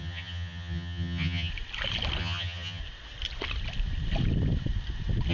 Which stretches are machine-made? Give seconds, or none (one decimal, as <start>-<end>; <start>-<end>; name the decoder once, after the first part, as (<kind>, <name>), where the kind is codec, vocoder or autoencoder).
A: 0.0-1.5 (vocoder, HiFi-GAN); 2.2-2.8